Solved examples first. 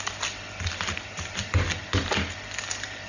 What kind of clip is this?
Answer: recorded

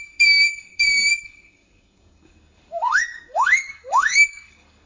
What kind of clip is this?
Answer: remade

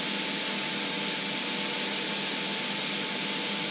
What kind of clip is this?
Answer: recorded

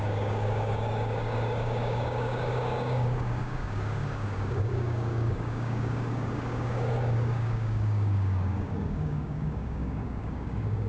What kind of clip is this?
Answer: remade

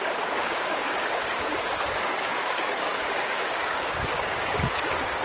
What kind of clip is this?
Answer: remade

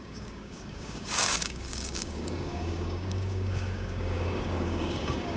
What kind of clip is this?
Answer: remade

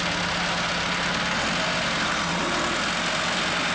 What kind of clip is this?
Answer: recorded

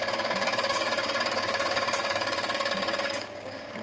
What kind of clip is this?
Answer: remade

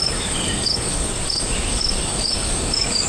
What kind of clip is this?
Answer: remade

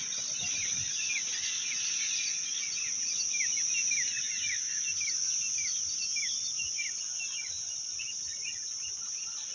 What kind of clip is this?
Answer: recorded